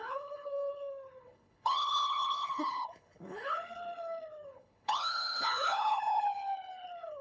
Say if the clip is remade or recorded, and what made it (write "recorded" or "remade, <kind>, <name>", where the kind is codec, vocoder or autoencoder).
remade, codec, HILCodec